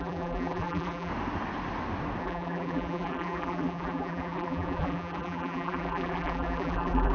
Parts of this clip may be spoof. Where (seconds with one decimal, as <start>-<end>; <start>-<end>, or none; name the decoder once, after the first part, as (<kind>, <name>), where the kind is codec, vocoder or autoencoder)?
0.0-1.1 (vocoder, BigVGAN v2); 2.2-7.1